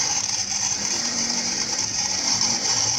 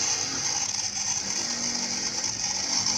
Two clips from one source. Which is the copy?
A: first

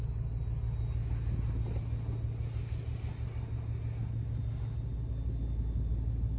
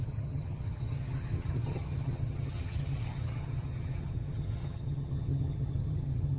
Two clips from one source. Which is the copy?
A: second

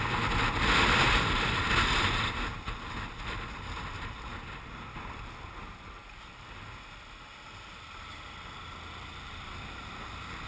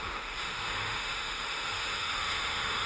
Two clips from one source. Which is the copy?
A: second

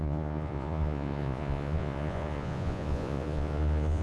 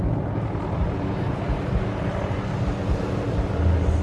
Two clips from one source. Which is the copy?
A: first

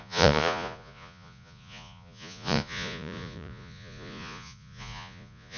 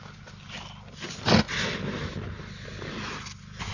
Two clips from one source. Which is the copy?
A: first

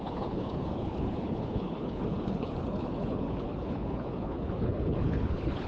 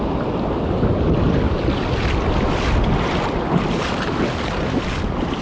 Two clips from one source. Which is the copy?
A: first